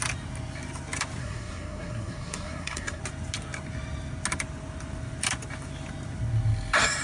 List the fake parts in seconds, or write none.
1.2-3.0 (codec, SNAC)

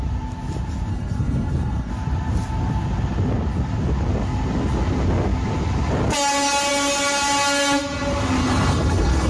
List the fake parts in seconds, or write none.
0.9-1.9 (codec, HILCodec); 8.4-9.3

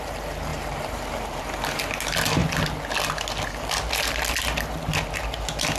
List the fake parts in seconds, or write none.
0.5-1.8 (vocoder, BigVGAN v2)

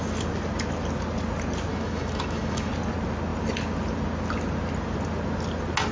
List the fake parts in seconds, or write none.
1.7-2.7 (autoencoder, DAC-VAE)

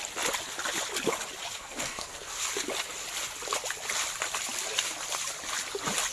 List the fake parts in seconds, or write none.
1.6-2.4 (codec, SNAC)

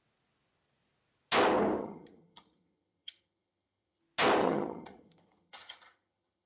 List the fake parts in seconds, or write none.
1.8-4.0 (vocoder, HiFi-GAN); 4.4-6.5

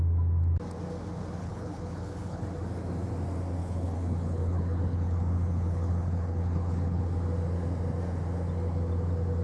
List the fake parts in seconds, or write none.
1.4-2.4 (codec, HILCodec); 3.6-7.0

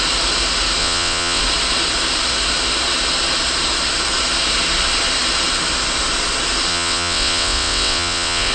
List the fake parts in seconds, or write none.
0.8-1.4 (vocoder, WaveNeXt); 6.7-8.5